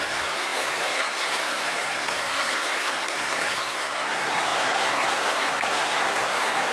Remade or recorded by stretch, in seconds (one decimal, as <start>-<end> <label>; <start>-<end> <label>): 0.0-6.7 remade